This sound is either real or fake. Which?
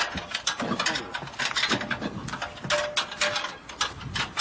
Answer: real